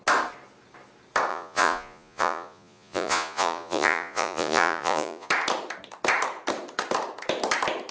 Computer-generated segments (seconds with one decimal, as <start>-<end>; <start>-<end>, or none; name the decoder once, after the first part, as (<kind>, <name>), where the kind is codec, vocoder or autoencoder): 1.3-5.3 (vocoder, Vocos)